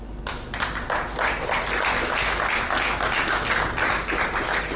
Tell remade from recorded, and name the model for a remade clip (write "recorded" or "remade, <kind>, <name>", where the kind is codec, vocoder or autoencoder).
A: recorded